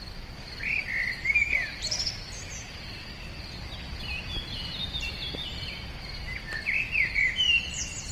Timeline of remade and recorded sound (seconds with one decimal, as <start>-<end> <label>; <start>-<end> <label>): 0.0-8.1 recorded